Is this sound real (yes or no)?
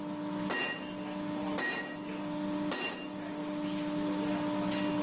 yes